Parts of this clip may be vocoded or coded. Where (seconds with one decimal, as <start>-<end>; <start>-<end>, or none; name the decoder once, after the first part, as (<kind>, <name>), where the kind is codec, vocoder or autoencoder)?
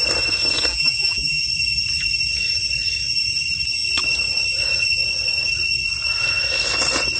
0.7-1.4 (vocoder, BigVGAN v2)